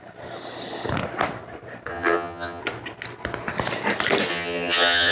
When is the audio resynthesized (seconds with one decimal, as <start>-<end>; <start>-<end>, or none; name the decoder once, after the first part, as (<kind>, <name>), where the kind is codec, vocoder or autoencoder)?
1.9-2.6 (vocoder, HiFi-GAN); 4.3-5.1